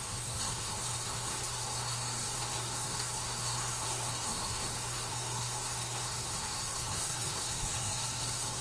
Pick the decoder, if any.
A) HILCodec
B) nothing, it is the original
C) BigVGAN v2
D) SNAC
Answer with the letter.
D